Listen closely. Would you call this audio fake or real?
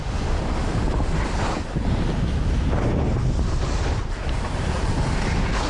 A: real